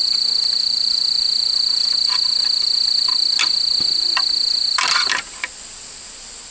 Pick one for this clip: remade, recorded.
recorded